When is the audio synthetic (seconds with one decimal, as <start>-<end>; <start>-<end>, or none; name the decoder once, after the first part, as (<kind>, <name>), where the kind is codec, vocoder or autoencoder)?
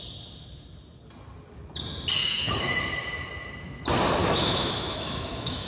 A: 2.2-2.8 (autoencoder, DAC-VAE); 4.2-5.7